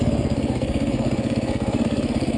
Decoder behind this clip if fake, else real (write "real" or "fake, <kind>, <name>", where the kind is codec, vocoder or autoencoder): fake, codec, SNAC